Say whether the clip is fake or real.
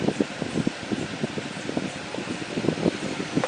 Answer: real